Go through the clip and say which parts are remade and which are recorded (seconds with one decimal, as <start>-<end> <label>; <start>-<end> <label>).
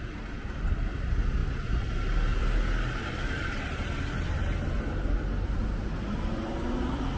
0.0-7.2 recorded